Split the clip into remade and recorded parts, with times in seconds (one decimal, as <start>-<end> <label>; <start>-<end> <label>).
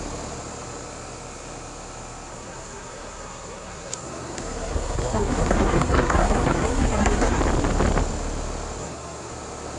0.0-2.3 recorded; 2.3-7.4 remade; 7.4-8.8 recorded; 8.8-9.3 remade; 9.3-9.8 recorded